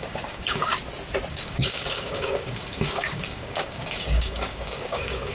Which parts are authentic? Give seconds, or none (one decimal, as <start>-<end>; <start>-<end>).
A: 0.7-1.3